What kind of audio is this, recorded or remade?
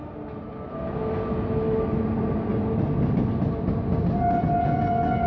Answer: recorded